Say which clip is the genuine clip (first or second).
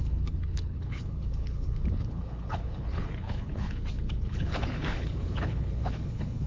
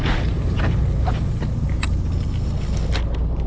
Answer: second